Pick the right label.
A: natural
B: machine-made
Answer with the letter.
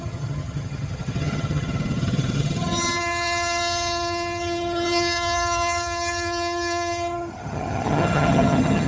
B